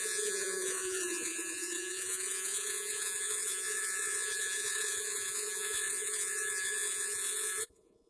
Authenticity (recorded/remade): remade